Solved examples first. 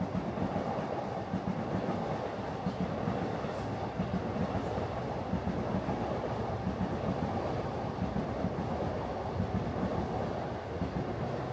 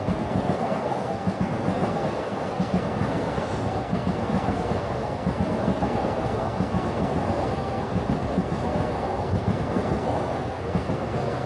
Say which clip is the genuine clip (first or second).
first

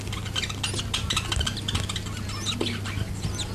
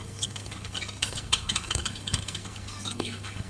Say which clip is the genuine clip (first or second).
first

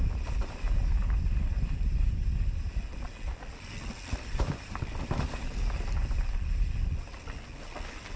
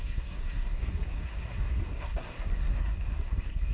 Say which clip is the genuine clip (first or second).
first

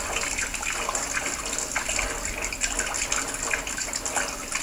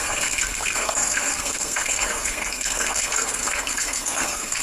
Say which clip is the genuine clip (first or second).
first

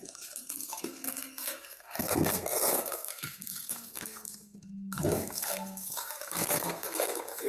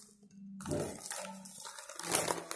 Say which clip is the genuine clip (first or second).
second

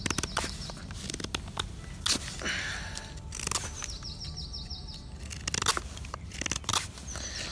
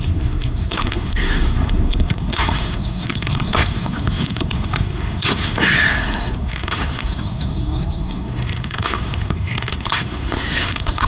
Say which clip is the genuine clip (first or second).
first